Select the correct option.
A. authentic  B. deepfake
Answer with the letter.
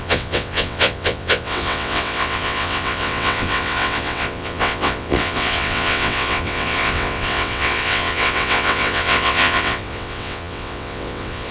B